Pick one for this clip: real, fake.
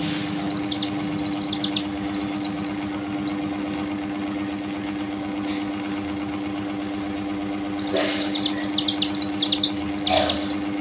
real